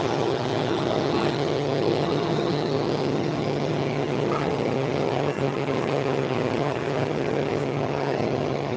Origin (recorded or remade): remade